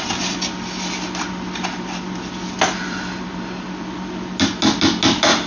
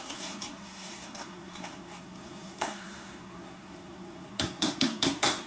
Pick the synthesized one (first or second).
second